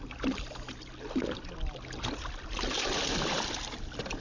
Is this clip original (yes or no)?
yes